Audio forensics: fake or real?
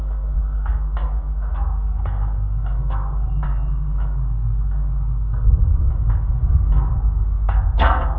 fake